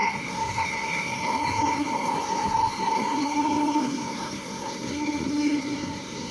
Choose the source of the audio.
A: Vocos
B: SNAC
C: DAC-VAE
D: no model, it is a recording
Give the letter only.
B